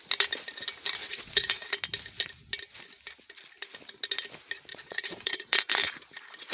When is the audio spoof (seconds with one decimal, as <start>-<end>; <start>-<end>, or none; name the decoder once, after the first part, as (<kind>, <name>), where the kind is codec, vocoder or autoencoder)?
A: 1.0-1.7 (vocoder, WaveNeXt); 4.7-5.6